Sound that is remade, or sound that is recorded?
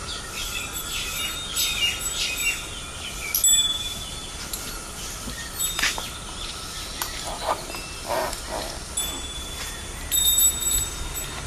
recorded